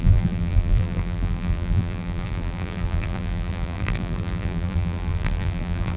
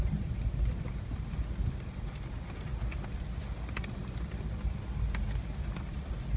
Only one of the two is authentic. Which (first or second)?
second